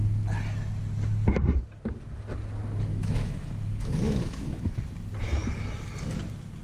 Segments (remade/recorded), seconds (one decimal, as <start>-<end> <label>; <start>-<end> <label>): 0.0-2.9 recorded; 2.9-4.8 remade; 4.8-6.6 recorded

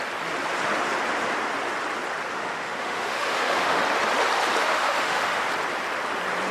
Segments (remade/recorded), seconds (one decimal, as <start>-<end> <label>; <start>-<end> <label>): 0.0-2.3 recorded; 2.3-3.8 remade; 3.8-4.6 recorded; 4.6-5.4 remade; 5.4-6.5 recorded

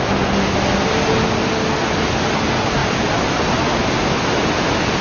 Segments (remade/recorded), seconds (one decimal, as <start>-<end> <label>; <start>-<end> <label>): 0.0-5.0 recorded

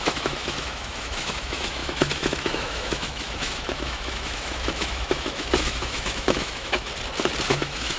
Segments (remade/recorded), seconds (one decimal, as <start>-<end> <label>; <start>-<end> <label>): 0.0-6.9 remade; 6.9-7.5 recorded; 7.5-8.0 remade